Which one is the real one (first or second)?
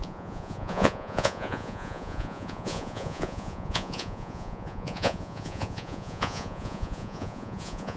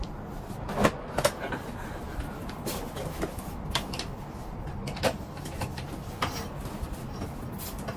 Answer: second